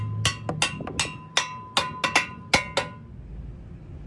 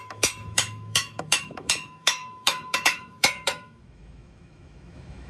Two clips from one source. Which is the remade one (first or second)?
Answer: second